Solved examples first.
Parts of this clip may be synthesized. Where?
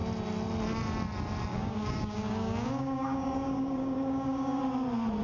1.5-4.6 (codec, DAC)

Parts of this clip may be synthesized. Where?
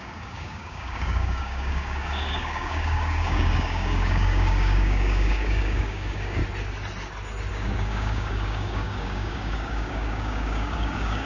0.0-6.4 (codec, DAC); 7.5-11.3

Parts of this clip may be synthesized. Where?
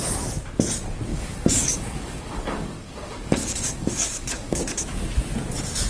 1.1-4.6 (codec, DAC)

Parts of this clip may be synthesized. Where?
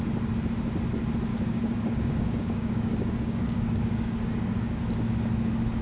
1.3-4.8 (codec, DAC)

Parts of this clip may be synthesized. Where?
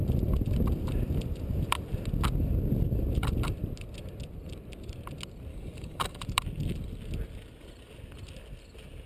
5.5-6.2 (codec, DAC)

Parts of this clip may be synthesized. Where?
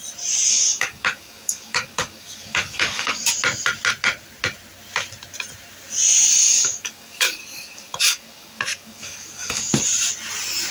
0.5-3.3 (codec, DAC); 6.3-9.7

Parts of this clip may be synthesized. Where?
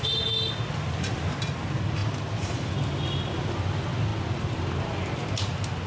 none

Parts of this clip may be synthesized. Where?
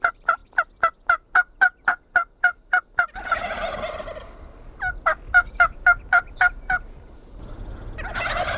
5.1-6.0 (codec, DAC)